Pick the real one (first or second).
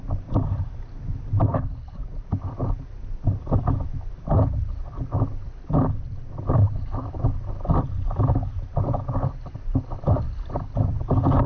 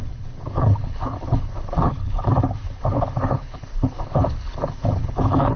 first